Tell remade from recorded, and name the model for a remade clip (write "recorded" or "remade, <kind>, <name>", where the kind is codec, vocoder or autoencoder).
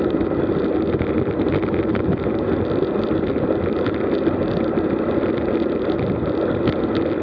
recorded